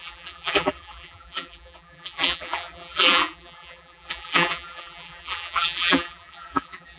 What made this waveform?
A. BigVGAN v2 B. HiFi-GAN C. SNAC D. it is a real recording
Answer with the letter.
A